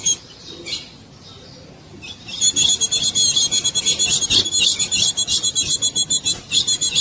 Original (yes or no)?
yes